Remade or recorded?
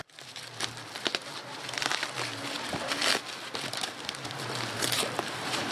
remade